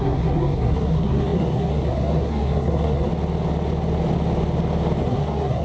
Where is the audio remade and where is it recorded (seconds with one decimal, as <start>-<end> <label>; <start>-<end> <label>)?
0.0-3.1 remade; 3.1-5.0 recorded; 5.0-5.6 remade